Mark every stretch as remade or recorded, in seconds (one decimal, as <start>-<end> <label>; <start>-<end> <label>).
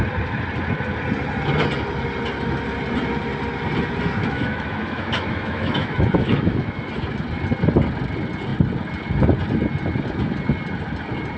0.0-4.2 recorded; 4.2-6.9 remade; 6.9-11.4 recorded